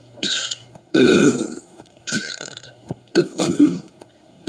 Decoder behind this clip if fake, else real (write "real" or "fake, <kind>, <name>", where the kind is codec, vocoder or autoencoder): fake, codec, SNAC